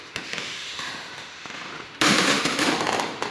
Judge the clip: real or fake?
fake